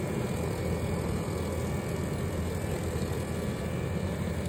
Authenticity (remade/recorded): recorded